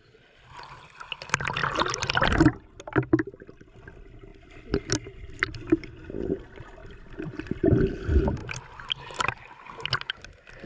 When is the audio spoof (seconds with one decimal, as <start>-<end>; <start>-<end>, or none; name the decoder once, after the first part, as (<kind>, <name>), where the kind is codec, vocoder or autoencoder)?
1.6-2.4 (vocoder, BigVGAN v2); 6.8-7.6; 8.4-8.9

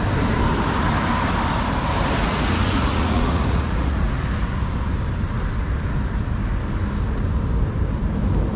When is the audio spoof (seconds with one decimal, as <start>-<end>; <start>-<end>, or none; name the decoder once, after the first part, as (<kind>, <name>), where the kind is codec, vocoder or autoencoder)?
2.2-4.2 (vocoder, Vocos)

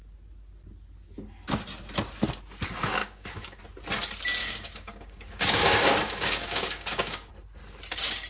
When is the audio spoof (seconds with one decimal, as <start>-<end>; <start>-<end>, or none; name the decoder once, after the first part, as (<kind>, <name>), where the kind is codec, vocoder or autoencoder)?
3.0-3.6 (codec, DAC); 4.4-7.3

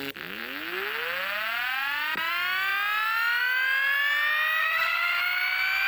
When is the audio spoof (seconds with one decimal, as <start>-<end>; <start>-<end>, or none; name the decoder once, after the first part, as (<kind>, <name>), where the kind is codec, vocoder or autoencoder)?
4.6-5.2 (codec, SNAC)